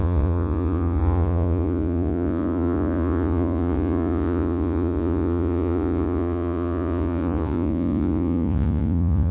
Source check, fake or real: fake